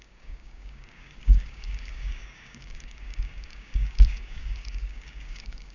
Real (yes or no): no